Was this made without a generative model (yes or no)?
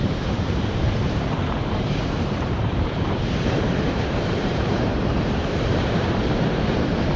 no